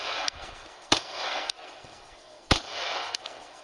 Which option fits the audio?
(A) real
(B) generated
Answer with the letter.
B